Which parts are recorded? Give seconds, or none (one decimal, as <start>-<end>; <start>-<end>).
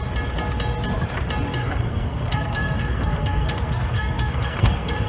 0.0-1.6